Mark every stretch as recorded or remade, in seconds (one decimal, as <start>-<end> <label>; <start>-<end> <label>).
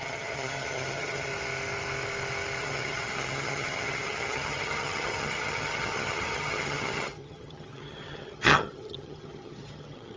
0.0-1.3 remade; 1.3-2.6 recorded; 2.6-10.2 remade